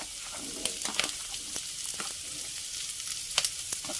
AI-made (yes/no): no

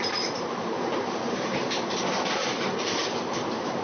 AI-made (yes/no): yes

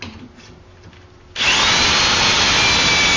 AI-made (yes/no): no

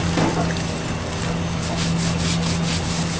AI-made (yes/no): no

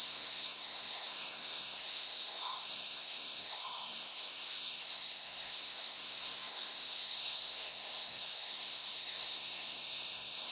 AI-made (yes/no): yes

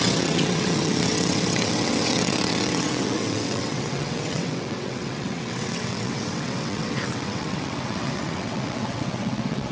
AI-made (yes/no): yes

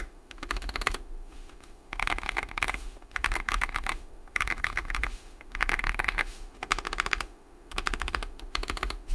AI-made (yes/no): yes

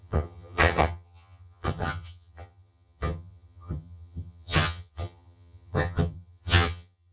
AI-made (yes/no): yes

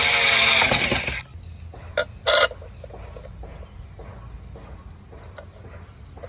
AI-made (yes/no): no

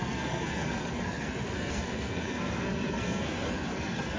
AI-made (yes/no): yes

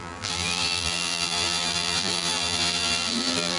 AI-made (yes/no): yes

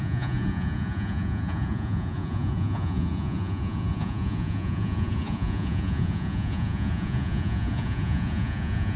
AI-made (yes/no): yes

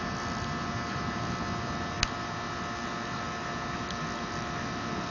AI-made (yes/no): no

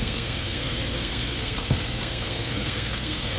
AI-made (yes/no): yes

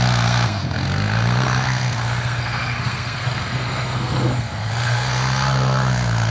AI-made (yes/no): yes